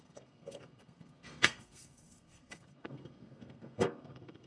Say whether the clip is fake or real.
fake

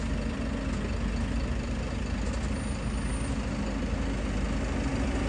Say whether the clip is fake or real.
real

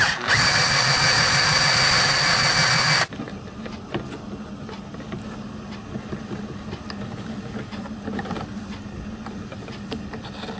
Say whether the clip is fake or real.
real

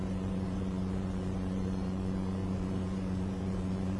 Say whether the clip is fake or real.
fake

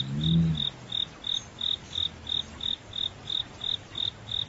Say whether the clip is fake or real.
real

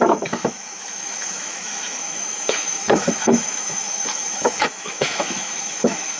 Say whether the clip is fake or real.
fake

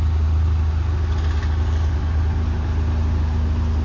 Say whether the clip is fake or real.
real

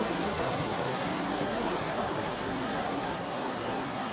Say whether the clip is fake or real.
fake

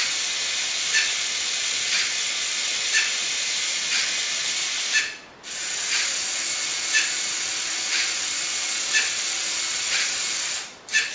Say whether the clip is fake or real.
real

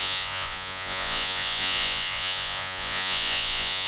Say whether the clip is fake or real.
fake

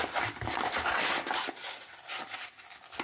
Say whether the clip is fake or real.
real